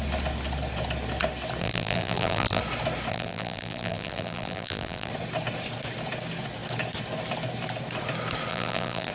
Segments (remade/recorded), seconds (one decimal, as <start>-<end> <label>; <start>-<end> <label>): 0.0-1.6 recorded; 1.6-2.6 remade; 2.6-3.1 recorded; 3.1-5.1 remade; 5.1-8.5 recorded; 8.5-9.1 remade